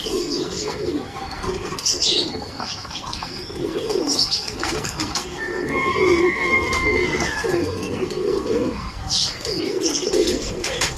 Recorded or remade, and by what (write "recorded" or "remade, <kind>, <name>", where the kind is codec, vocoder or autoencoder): remade, codec, SNAC